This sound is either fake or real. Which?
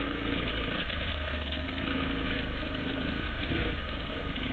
fake